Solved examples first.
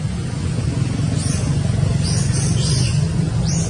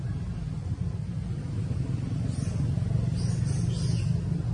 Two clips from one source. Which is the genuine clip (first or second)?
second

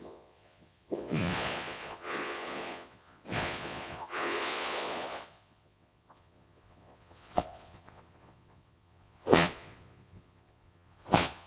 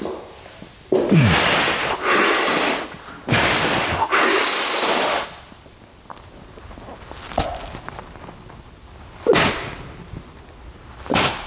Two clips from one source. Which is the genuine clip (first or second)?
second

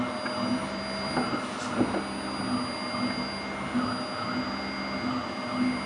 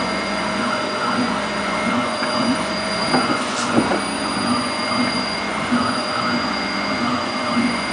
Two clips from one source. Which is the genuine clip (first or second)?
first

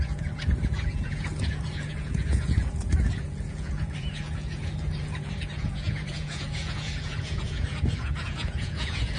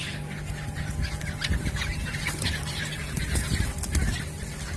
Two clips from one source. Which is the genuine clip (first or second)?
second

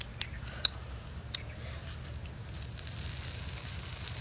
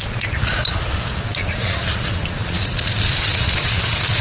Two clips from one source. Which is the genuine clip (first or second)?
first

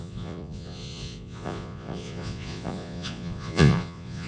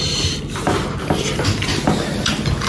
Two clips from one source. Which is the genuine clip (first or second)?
second